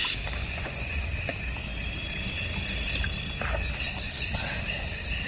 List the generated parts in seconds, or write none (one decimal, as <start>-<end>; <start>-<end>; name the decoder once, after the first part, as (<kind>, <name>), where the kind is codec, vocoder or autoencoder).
0.4-1.0 (vocoder, Vocos)